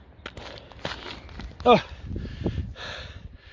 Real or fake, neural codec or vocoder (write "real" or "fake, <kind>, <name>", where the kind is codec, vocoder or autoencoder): real